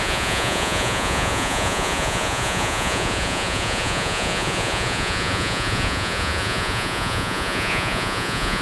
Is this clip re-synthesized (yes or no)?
yes